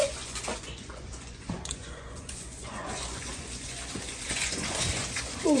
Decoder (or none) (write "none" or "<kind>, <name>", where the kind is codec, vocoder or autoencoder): vocoder, Vocos